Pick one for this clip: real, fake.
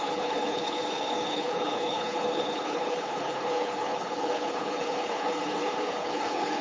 fake